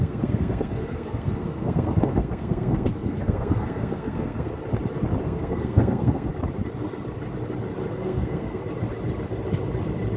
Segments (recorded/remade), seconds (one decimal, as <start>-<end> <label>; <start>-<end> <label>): 0.0-4.6 remade; 4.6-5.2 recorded; 5.2-6.3 remade; 6.3-7.9 recorded; 7.9-8.6 remade; 8.6-10.2 recorded